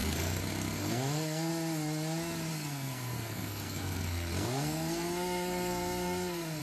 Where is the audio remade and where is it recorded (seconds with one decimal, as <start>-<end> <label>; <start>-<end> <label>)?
0.0-1.5 remade; 1.5-2.5 recorded; 2.5-6.6 remade